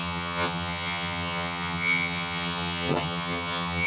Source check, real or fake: fake